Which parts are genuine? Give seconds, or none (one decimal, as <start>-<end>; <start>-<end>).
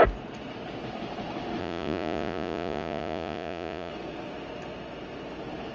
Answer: 0.0-1.6; 3.9-5.7